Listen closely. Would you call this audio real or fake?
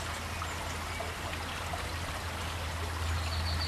real